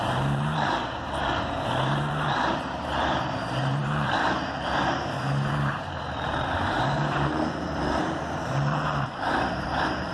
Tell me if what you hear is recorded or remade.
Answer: remade